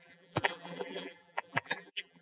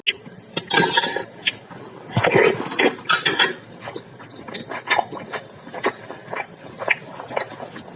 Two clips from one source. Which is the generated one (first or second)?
first